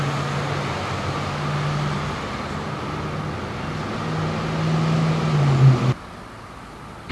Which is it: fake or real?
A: real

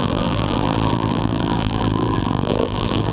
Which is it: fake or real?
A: fake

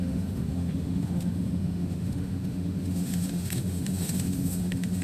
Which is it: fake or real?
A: fake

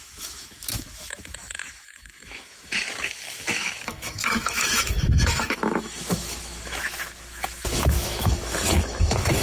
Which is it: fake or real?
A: fake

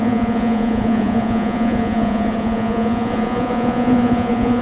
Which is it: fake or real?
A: fake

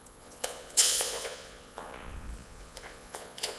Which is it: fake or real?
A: fake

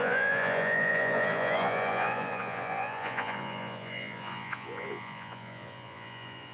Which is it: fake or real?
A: fake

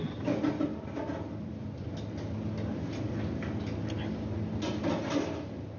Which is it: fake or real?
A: real